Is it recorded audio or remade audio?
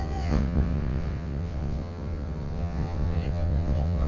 remade